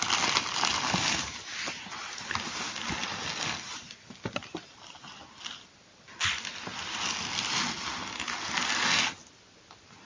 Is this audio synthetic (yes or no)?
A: no